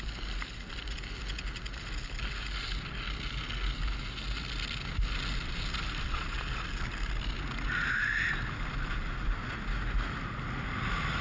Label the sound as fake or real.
real